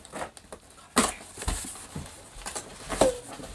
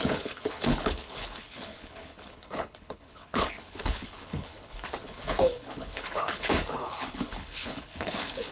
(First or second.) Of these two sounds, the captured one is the first